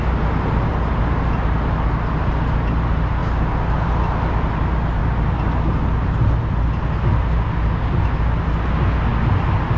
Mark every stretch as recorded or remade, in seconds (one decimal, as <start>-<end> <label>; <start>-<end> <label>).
0.0-9.8 recorded